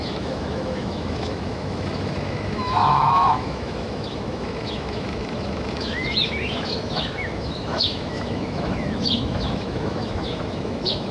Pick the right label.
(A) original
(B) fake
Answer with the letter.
B